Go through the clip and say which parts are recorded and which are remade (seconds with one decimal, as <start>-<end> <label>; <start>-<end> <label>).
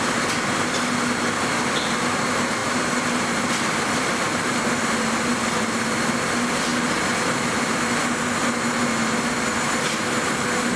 0.0-2.6 recorded; 2.6-4.5 remade; 4.5-6.7 recorded; 6.7-7.4 remade; 7.4-10.8 recorded